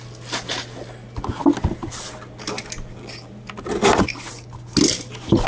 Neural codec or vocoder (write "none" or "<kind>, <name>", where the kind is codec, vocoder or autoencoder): none